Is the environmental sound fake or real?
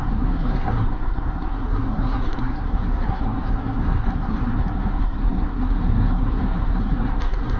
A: fake